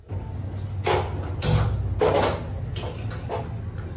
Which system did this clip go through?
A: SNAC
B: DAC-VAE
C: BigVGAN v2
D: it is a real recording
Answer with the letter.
D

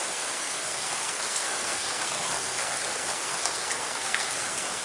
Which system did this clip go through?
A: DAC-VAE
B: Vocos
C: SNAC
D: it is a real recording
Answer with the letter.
C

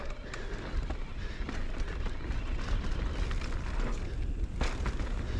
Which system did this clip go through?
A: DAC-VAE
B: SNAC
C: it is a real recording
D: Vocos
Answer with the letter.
C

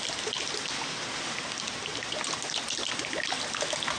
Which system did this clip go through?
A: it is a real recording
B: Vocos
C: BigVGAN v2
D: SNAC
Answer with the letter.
A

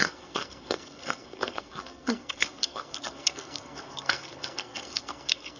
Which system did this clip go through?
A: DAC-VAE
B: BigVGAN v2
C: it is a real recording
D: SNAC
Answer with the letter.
D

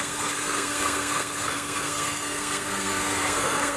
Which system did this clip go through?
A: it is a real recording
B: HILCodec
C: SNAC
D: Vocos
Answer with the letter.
C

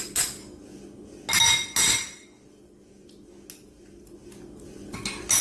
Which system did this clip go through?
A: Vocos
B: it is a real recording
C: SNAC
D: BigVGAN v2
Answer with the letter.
B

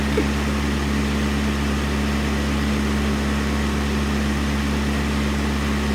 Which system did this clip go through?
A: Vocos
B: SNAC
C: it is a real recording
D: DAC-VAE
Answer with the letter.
C